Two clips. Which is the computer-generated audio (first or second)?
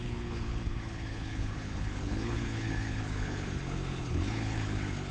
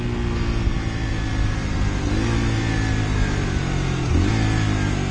first